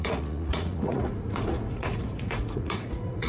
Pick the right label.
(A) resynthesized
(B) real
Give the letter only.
A